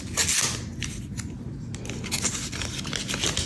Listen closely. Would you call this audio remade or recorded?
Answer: recorded